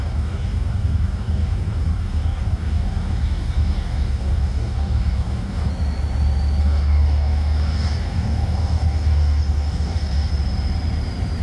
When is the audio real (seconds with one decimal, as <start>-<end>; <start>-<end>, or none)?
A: 5.7-6.6; 10.3-11.4